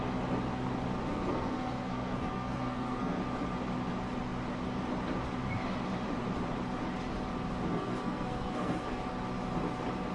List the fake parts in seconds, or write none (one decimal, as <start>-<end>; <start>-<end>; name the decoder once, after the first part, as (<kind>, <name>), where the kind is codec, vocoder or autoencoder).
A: 1.1-3.2 (codec, SNAC); 7.7-9.0